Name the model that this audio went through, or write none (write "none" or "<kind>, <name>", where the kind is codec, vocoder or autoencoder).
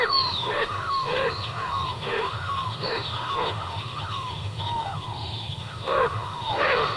autoencoder, DAC-VAE